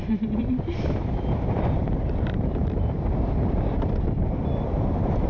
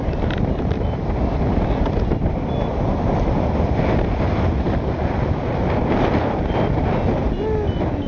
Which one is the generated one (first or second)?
first